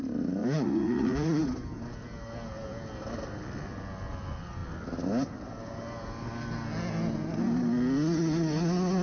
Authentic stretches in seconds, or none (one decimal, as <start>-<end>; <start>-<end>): 0.0-0.4; 1.4-9.0